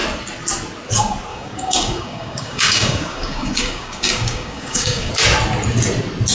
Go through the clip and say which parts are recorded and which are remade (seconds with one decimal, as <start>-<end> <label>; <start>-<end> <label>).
0.0-1.3 recorded; 1.3-5.1 remade; 5.1-6.3 recorded